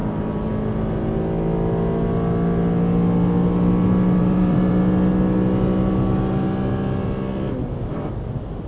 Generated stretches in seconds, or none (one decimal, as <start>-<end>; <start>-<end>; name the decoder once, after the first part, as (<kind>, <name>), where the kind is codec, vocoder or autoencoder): 0.0-0.5 (vocoder, BigVGAN v2); 3.8-4.7